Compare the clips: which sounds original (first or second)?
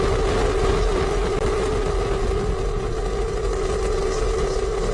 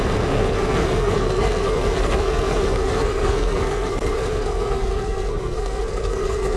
first